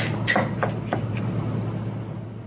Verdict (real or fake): real